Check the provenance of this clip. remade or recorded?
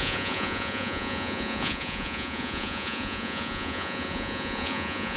remade